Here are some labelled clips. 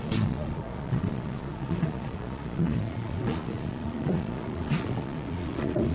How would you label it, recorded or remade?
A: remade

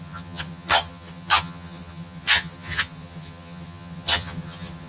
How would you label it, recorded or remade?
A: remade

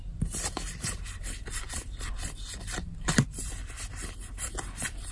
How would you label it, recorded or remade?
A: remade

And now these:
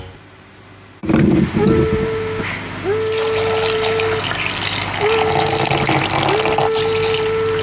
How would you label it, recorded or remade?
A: recorded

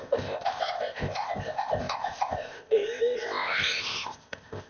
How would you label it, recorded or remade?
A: remade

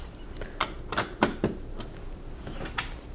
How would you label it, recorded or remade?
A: recorded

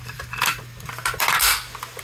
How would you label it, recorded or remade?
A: recorded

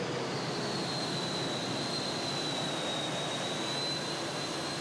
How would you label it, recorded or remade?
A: recorded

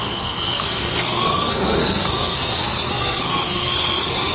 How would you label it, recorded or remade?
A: remade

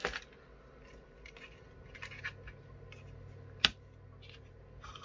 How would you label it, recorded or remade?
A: recorded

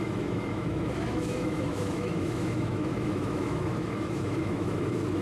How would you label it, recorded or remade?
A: remade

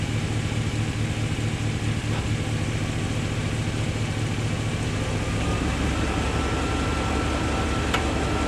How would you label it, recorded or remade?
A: recorded